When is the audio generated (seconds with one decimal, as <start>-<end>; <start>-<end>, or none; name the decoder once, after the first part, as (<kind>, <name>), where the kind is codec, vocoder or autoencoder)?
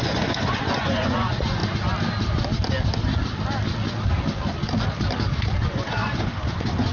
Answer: 0.0-1.6 (vocoder, Vocos); 5.7-6.9